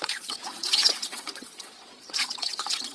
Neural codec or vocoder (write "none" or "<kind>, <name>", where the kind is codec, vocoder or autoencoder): vocoder, Vocos